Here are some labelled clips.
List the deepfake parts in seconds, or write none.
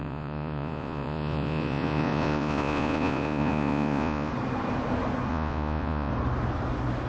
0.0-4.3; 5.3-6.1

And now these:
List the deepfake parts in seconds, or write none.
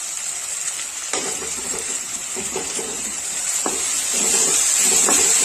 1.1-3.4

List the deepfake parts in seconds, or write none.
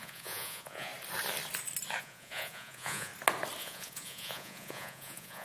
0.0-0.9; 2.0-3.1; 3.6-5.4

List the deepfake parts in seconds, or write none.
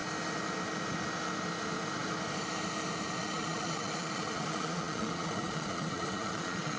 3.2-6.8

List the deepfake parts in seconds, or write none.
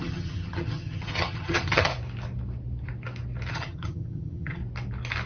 0.0-1.9; 3.5-4.6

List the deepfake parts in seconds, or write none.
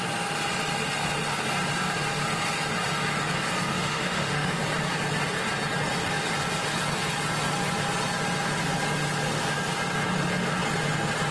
3.7-4.6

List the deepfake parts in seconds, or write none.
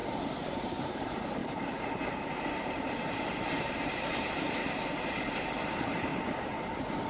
0.6-4.6; 5.3-7.1